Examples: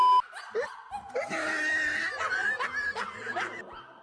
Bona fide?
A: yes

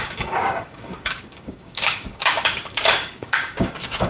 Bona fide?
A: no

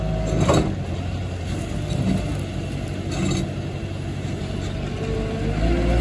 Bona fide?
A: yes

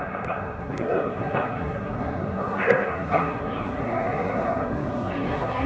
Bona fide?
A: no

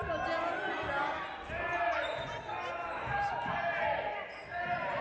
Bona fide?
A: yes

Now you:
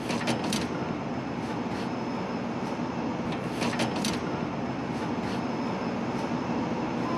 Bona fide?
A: yes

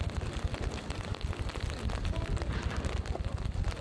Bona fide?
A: yes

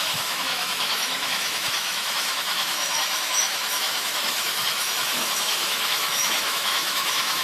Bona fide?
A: no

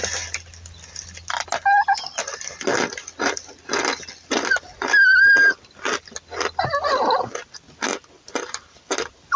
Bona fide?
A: yes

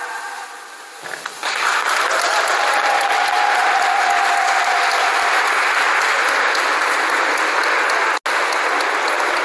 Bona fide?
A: yes